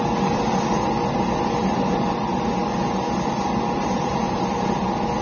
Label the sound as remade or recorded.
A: recorded